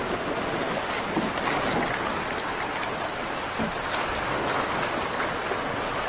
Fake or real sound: real